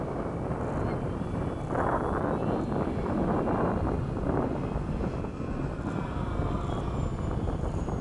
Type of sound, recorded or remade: recorded